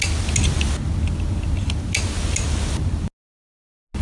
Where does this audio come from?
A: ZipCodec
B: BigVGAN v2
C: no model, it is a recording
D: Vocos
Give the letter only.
C